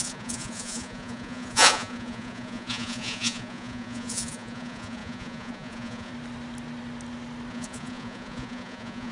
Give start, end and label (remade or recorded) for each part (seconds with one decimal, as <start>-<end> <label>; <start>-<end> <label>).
0.0-6.1 remade; 6.1-7.5 recorded; 7.5-9.1 remade

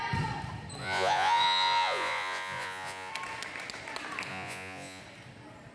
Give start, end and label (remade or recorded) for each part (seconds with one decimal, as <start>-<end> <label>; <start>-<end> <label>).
0.0-0.8 recorded; 0.8-3.1 remade; 3.1-4.3 recorded; 4.3-5.0 remade; 5.0-5.7 recorded

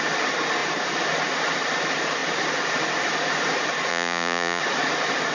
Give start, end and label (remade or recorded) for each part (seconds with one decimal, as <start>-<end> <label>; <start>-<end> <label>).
0.0-3.9 recorded; 3.9-4.6 remade; 4.6-5.3 recorded